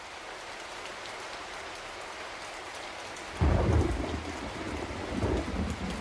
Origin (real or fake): real